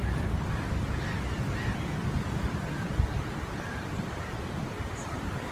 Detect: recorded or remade remade